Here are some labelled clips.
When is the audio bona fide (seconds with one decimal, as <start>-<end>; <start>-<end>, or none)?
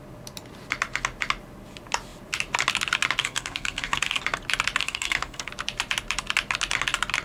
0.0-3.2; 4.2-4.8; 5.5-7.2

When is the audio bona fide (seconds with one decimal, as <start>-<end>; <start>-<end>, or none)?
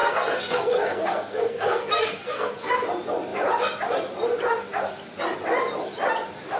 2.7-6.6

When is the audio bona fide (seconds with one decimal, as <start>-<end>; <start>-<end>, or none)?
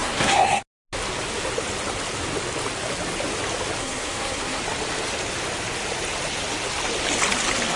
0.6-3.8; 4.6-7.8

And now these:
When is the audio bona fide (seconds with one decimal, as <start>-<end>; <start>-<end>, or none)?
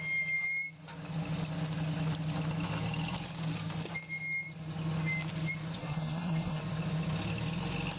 0.0-5.8; 6.6-8.0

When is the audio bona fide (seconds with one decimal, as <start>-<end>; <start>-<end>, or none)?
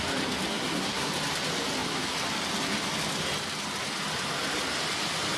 0.0-0.5; 1.1-5.4